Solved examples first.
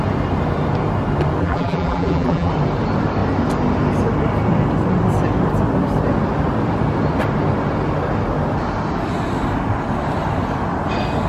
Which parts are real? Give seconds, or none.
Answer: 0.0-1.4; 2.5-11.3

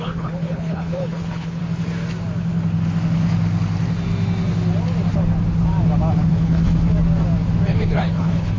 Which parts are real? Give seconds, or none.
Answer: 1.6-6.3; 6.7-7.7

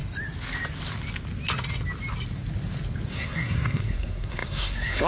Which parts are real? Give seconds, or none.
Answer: 0.0-3.1

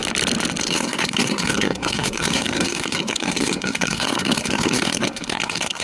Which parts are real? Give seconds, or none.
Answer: 0.0-0.6